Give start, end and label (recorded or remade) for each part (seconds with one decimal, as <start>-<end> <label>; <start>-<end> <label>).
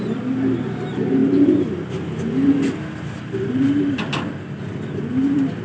0.0-5.6 recorded